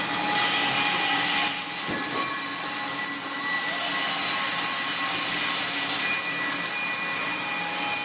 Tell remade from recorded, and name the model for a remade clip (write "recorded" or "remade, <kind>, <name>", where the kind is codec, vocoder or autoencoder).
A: recorded